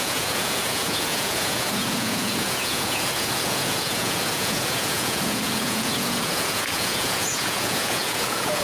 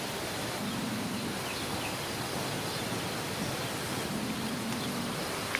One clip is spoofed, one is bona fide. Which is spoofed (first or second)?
first